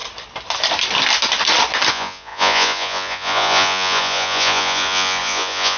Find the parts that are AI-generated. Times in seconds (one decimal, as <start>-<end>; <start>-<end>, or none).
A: 1.9-5.8